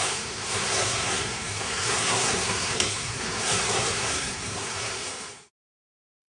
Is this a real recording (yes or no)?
no